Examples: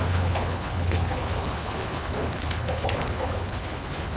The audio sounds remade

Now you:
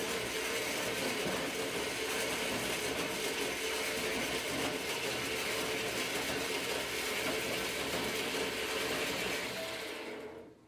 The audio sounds recorded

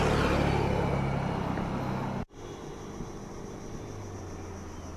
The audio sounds recorded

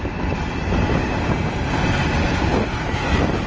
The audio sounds recorded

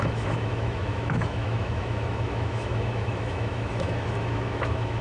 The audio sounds remade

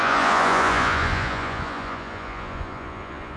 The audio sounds remade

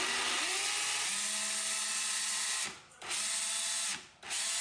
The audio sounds recorded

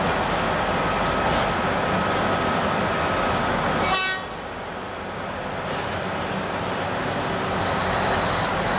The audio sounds recorded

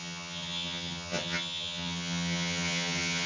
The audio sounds remade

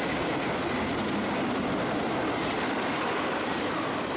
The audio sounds recorded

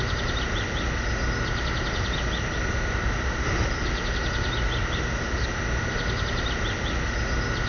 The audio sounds recorded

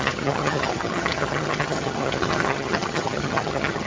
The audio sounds remade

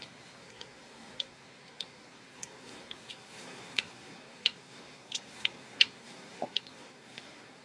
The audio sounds remade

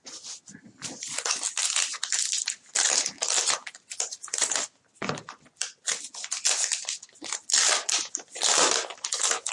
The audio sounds recorded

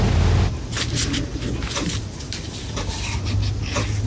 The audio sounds recorded